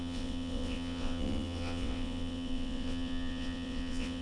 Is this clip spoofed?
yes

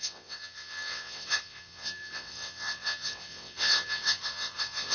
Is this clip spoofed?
yes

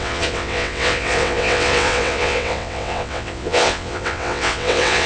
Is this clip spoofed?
yes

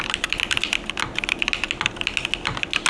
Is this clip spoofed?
no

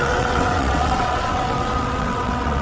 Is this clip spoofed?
yes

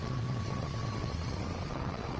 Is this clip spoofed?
yes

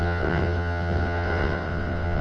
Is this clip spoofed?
yes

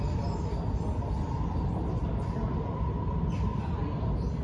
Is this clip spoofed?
no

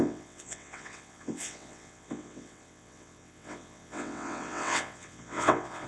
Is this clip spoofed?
yes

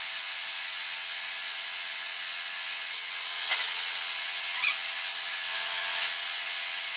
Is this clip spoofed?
yes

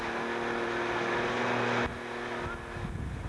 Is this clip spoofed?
no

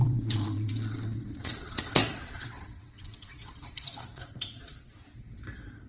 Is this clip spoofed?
yes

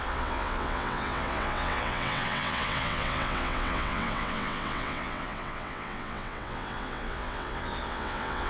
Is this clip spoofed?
yes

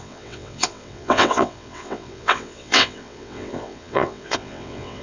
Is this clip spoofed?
yes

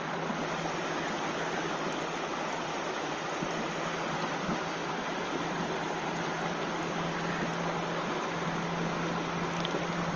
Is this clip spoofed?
no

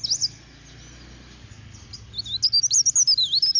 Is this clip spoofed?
no